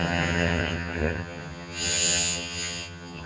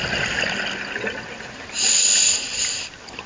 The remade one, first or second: first